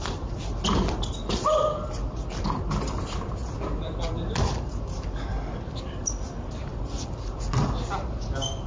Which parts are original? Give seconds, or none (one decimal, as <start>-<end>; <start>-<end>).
0.0-8.7